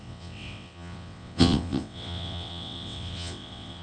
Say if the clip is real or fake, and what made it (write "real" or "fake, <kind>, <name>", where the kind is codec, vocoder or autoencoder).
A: fake, vocoder, WaveNeXt